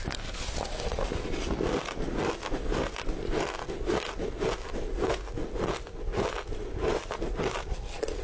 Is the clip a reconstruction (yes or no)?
no